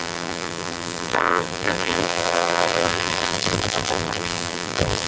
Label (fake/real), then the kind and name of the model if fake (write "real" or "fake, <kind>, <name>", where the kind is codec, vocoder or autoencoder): fake, vocoder, BigVGAN v2